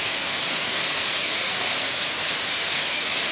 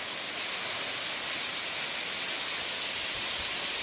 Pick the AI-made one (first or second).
first